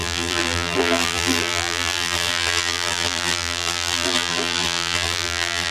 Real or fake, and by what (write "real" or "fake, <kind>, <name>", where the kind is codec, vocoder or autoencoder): fake, vocoder, BigVGAN v2